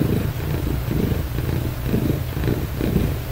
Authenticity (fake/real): real